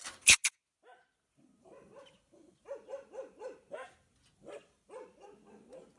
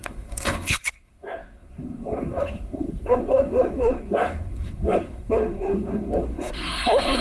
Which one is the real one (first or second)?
first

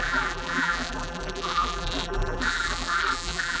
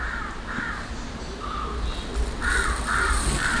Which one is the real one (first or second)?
second